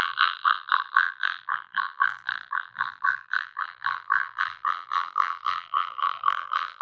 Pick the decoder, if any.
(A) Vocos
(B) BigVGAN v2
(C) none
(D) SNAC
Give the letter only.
B